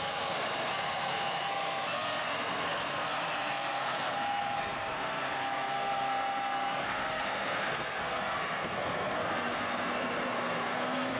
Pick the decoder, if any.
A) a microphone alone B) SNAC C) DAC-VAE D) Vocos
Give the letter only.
B